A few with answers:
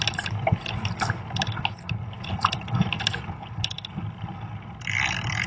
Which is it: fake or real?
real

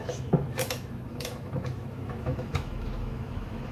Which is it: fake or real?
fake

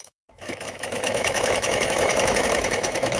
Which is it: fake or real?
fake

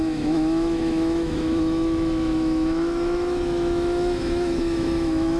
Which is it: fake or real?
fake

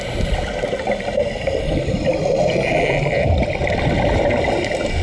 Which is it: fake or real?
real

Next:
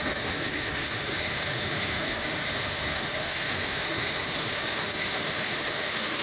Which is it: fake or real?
fake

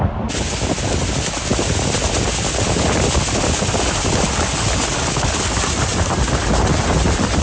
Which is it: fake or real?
real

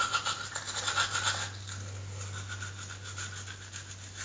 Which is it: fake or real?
real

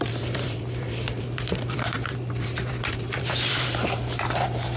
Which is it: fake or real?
fake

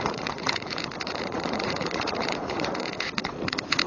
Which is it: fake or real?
fake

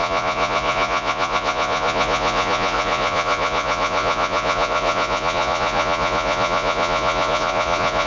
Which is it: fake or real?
fake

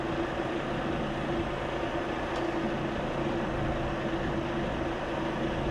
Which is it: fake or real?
real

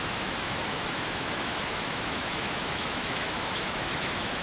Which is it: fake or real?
fake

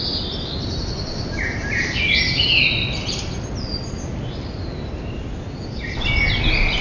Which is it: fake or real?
real